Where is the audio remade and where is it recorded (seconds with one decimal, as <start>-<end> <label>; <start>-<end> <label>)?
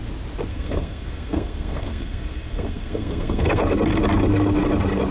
0.0-0.5 recorded; 0.5-3.6 remade; 3.6-5.1 recorded